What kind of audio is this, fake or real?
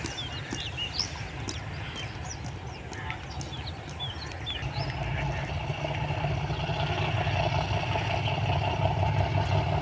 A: real